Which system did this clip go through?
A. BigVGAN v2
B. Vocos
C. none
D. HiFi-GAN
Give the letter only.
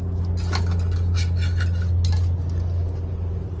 C